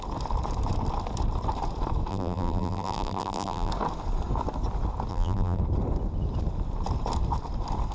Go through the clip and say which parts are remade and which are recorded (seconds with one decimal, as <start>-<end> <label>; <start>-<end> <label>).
0.0-2.1 recorded; 2.1-3.7 remade; 3.7-5.1 recorded; 5.1-5.6 remade; 5.6-7.9 recorded